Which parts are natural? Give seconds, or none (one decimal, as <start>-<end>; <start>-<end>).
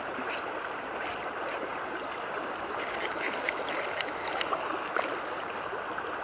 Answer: 0.0-6.2